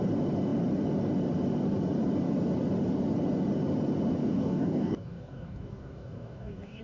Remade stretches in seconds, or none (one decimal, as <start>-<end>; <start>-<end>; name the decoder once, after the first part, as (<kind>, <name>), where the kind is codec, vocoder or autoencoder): 4.2-6.8 (codec, DAC)